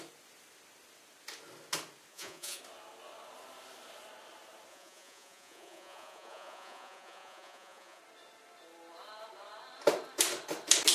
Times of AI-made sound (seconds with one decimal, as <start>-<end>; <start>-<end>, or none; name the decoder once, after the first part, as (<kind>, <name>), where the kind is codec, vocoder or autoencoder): 2.1-2.6 (vocoder, Vocos); 4.7-8.0